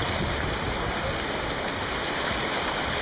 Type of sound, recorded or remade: recorded